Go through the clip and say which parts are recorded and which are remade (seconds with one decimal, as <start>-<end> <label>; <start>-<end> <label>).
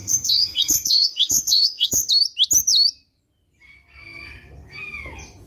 0.0-2.1 remade; 2.1-5.5 recorded